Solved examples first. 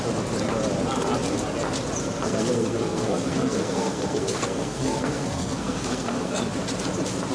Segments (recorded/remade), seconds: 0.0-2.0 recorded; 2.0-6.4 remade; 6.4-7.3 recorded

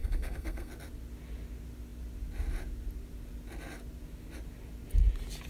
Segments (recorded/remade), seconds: 0.0-0.7 remade; 0.7-5.5 recorded

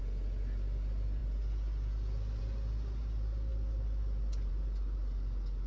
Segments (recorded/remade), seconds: 0.0-5.7 recorded

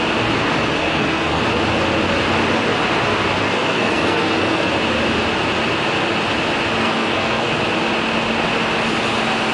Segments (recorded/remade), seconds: 0.0-0.8 recorded; 0.8-1.4 remade; 1.4-3.4 recorded; 3.4-4.7 remade; 4.7-6.8 recorded; 6.8-7.5 remade; 7.5-9.5 recorded

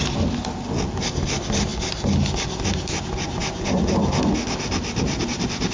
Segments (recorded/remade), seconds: 0.0-5.7 recorded

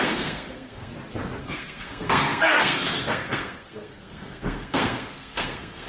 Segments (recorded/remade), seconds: 0.0-0.9 remade; 0.9-1.4 recorded; 1.4-5.9 remade

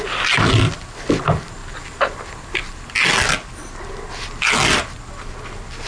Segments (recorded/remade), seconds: 0.0-5.9 recorded